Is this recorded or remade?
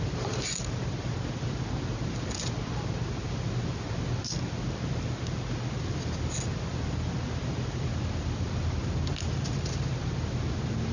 recorded